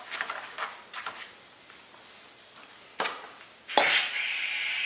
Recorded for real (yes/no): yes